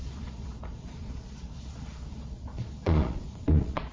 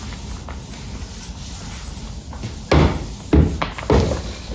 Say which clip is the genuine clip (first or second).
second